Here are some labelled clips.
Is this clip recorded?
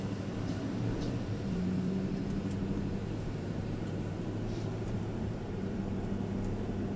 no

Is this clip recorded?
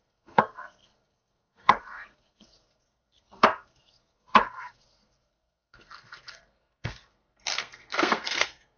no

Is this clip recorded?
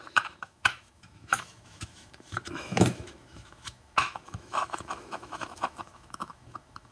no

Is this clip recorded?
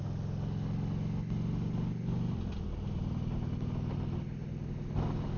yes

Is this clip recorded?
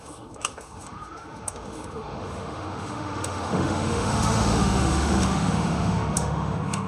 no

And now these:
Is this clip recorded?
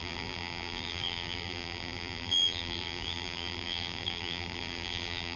no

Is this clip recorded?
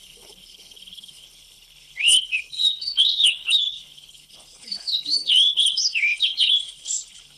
no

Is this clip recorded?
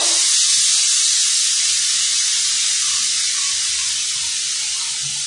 yes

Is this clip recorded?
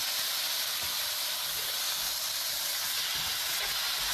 yes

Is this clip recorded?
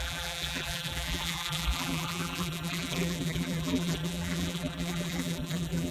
no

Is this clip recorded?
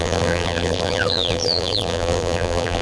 no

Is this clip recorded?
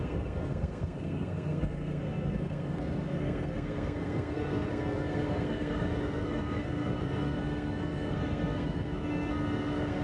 no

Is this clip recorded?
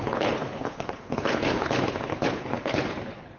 no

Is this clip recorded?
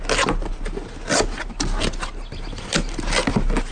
yes